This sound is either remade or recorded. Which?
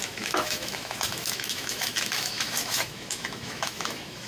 remade